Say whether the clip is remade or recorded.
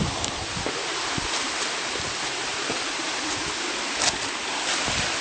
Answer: recorded